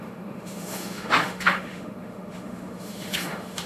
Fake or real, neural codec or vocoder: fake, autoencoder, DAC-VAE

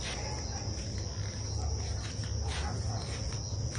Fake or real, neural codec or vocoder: real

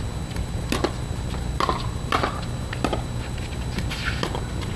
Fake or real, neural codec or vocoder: real